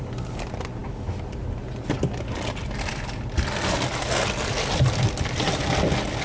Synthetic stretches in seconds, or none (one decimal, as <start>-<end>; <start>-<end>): none